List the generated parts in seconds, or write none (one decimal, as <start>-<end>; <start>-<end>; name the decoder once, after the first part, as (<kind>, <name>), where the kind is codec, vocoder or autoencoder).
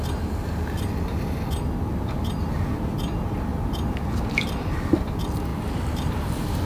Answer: 3.5-4.9 (vocoder, BigVGAN v2); 5.5-6.6